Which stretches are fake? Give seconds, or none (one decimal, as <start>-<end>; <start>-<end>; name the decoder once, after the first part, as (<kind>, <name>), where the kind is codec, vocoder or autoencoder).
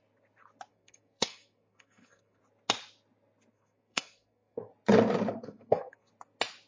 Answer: 0.7-2.4 (codec, SNAC); 3.5-4.7; 5.4-6.1